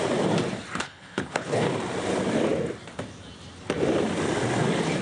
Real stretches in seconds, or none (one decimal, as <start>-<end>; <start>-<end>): 0.0-0.8; 1.7-5.0